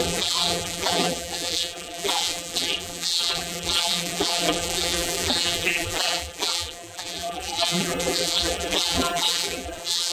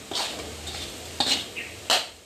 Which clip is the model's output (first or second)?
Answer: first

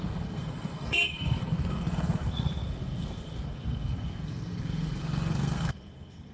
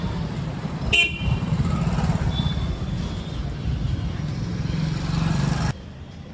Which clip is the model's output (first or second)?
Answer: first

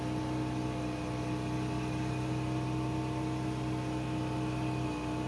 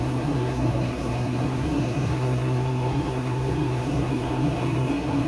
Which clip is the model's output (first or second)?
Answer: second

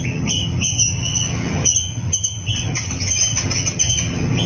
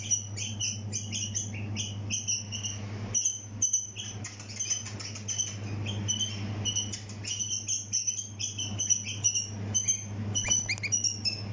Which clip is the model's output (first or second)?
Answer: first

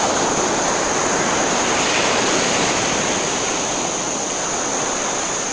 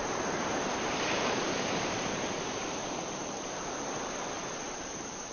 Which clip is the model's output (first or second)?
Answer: second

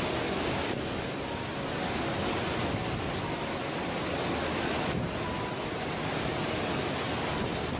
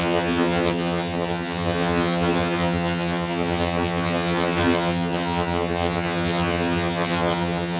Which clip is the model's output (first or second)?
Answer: second